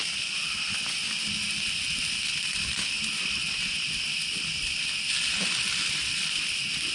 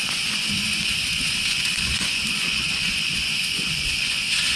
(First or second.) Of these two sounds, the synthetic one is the second